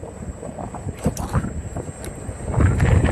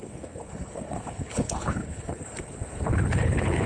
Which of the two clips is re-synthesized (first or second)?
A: second